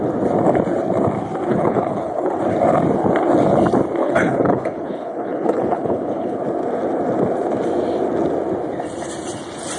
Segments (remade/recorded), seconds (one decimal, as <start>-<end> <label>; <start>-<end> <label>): 0.0-1.5 recorded; 1.5-2.4 remade; 2.4-4.0 recorded; 4.0-6.4 remade; 6.4-9.8 recorded